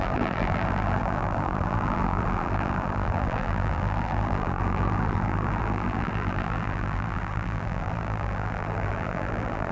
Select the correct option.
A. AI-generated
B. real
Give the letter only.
A